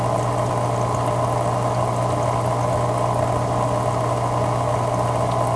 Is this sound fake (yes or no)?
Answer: no